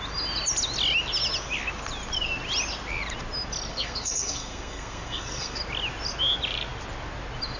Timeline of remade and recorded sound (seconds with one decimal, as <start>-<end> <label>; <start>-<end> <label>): 0.0-3.7 recorded; 3.7-5.6 remade; 5.6-7.6 recorded